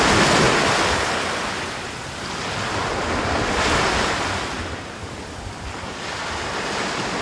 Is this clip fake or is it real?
real